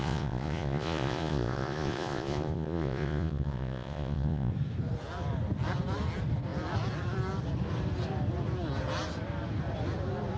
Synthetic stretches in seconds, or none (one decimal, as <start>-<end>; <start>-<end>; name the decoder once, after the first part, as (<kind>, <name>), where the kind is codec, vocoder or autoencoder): 0.0-4.5 (vocoder, Vocos)